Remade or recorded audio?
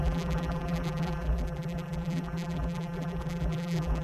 remade